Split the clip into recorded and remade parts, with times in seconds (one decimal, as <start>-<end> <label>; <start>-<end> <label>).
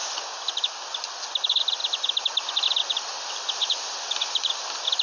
0.0-5.0 recorded